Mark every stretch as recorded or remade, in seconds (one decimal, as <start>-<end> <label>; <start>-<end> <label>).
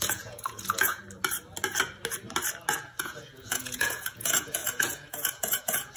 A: 0.0-1.0 remade; 1.0-3.0 recorded; 3.0-6.0 remade